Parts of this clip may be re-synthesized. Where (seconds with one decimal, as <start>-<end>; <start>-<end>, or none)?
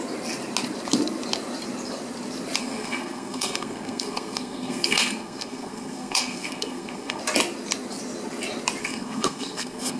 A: 2.6-7.2; 8.8-10.0